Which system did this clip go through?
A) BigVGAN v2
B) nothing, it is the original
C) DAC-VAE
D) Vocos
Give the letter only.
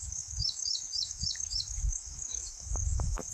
C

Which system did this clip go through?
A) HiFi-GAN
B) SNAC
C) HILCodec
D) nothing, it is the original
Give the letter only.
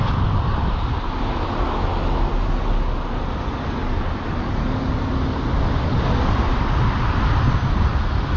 D